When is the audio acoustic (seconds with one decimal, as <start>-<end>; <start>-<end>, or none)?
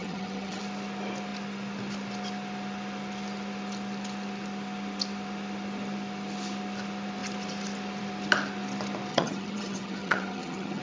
0.6-9.1